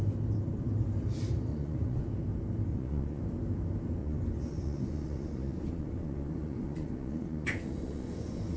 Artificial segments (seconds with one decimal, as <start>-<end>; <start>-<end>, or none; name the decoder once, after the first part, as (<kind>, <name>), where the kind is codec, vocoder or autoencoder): 1.5-2.0 (vocoder, Vocos); 2.7-3.2; 4.0-8.6